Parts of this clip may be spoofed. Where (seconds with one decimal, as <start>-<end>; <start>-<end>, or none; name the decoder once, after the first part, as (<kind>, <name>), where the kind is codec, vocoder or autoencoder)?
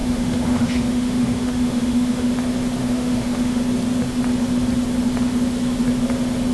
0.0-2.3 (autoencoder, DAC-VAE); 2.8-3.6